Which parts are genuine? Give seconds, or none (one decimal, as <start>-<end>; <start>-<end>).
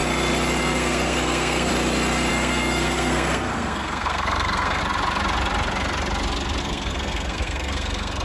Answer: 0.0-0.6; 1.7-2.3; 4.8-6.6